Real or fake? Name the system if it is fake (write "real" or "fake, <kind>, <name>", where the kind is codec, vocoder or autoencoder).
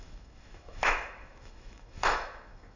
fake, autoencoder, DAC-VAE